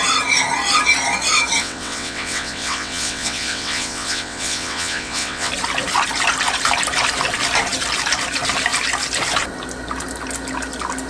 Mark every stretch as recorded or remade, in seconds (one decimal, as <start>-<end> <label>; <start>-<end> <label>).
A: 0.0-1.6 recorded; 1.6-5.5 remade; 5.5-11.1 recorded